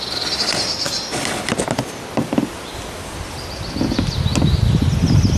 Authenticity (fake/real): real